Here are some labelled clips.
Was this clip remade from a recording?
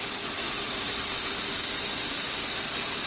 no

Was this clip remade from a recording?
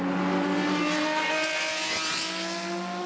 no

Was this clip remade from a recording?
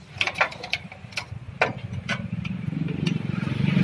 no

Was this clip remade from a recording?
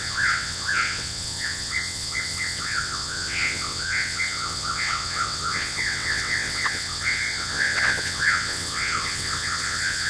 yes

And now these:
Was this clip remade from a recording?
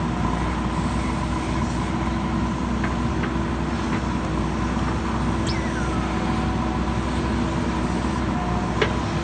no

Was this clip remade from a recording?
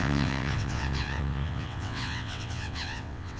yes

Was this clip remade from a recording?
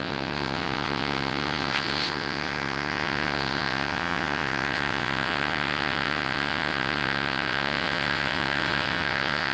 yes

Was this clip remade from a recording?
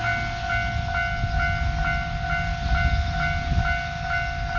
no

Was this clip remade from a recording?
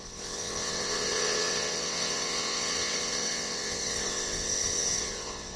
yes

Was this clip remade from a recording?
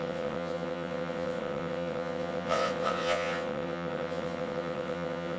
yes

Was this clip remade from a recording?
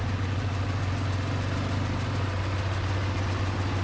no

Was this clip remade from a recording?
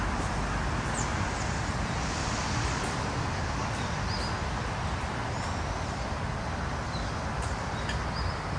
no